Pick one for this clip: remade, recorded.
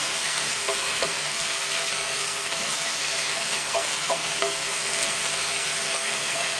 remade